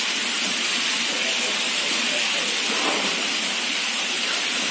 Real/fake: real